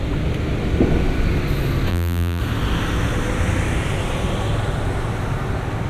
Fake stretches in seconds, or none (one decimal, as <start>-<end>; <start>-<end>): 1.9-2.4